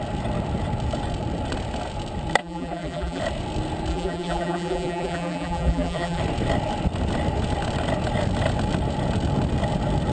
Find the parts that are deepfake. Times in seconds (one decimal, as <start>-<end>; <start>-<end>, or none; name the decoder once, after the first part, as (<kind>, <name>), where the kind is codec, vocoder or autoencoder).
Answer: 2.4-3.2 (vocoder, BigVGAN v2); 3.9-6.2